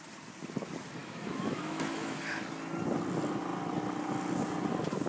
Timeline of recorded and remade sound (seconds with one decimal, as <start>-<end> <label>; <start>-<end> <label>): 0.0-1.0 recorded; 1.0-2.2 remade; 2.2-5.1 recorded